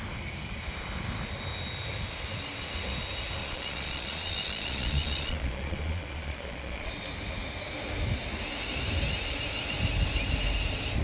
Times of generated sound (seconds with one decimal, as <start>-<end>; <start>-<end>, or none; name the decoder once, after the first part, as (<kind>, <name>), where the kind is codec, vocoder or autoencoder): 3.4-6.9 (vocoder, Vocos)